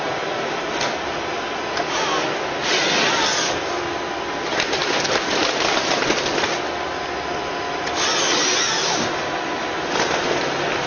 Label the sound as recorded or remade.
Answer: recorded